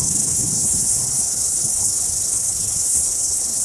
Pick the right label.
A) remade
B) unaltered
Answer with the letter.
A